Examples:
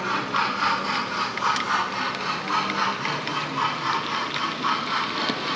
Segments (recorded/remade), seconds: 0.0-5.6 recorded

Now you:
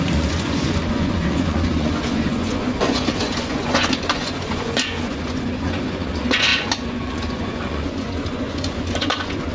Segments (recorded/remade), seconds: 0.0-9.5 remade

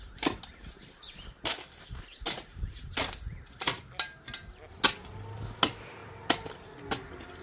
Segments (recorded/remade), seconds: 0.0-7.4 recorded

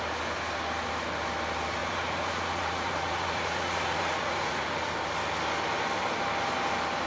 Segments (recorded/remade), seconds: 0.0-1.8 recorded; 1.8-4.9 remade; 4.9-7.1 recorded

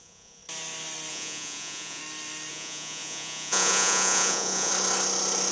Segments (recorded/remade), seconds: 0.0-0.4 remade; 0.4-1.1 recorded; 1.1-2.0 remade; 2.0-2.5 recorded; 2.5-4.7 remade; 4.7-5.5 recorded